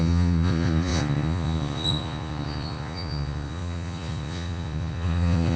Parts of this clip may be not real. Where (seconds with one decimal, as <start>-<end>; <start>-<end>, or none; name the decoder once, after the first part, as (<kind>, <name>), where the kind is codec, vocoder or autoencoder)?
0.0-5.6 (vocoder, Vocos)